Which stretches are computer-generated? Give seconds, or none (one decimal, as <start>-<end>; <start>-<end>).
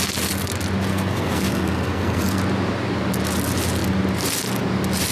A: 0.9-2.4